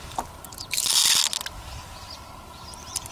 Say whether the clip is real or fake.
real